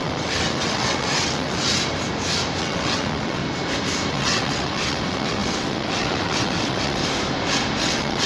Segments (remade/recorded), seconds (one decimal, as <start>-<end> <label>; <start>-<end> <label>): 0.0-1.7 remade; 1.7-2.6 recorded; 2.6-3.4 remade; 3.4-4.1 recorded; 4.1-7.0 remade; 7.0-7.8 recorded; 7.8-8.3 remade